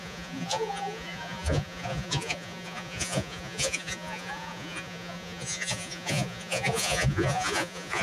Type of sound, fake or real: fake